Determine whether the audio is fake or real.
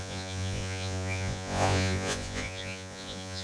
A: fake